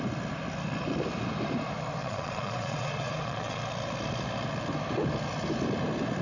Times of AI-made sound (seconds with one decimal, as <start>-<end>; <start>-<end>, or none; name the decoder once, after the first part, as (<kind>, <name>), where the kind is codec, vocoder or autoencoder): 2.0-3.6 (vocoder, Vocos)